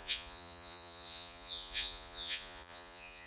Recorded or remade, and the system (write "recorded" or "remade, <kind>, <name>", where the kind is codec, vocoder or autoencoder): remade, vocoder, Vocos